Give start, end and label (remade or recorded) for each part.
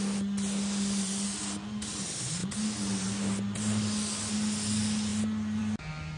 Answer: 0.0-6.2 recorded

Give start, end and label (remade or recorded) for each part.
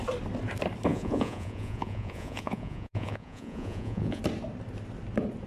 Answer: 0.0-0.9 recorded; 0.9-4.2 remade; 4.2-5.5 recorded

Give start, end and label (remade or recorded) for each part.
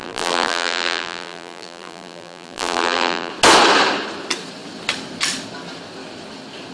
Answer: 0.0-3.3 remade; 3.3-6.7 recorded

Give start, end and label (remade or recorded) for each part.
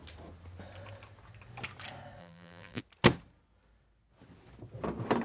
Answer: 0.0-2.2 recorded; 2.2-2.8 remade; 2.8-5.2 recorded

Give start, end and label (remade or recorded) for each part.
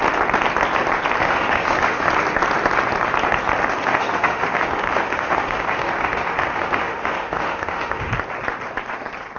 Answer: 0.0-1.2 recorded; 1.2-2.1 remade; 2.1-3.8 recorded; 3.8-8.1 remade; 8.1-9.4 recorded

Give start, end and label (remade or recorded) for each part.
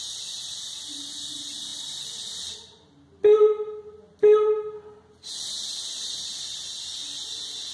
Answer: 0.0-7.7 recorded